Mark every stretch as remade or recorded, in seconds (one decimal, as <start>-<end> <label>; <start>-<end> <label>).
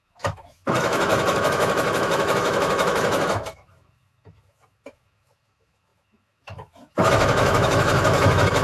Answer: 0.0-8.6 remade